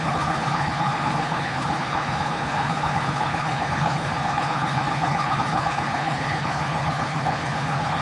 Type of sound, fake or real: fake